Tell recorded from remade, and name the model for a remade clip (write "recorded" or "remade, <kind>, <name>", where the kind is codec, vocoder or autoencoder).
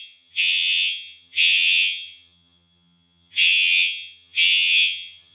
remade, vocoder, HiFi-GAN